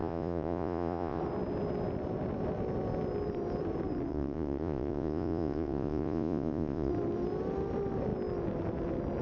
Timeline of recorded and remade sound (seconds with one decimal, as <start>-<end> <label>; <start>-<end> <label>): 0.0-1.2 remade; 1.2-4.1 recorded; 4.1-6.9 remade; 6.9-9.2 recorded